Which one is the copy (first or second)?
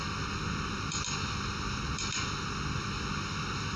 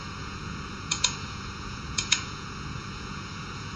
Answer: second